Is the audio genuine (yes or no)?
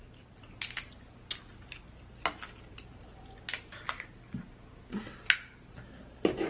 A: yes